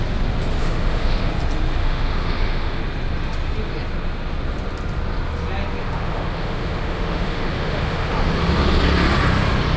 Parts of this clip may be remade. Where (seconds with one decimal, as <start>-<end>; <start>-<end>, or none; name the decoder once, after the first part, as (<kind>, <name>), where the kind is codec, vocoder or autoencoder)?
0.6-1.3 (autoencoder, DAC-VAE); 1.8-2.8; 5.8-8.1